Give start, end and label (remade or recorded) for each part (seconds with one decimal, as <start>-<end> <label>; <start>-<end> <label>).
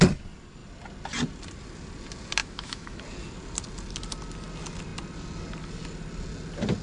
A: 0.0-2.4 recorded; 2.4-3.0 remade; 3.0-6.8 recorded